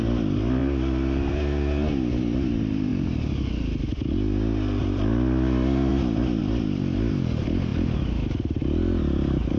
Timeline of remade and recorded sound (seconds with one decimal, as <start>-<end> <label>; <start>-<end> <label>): 0.0-0.6 remade; 0.6-2.2 recorded; 2.2-2.9 remade; 2.9-4.8 recorded; 4.8-5.9 remade; 5.9-6.4 recorded; 6.4-9.6 remade